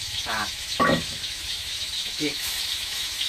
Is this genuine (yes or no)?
no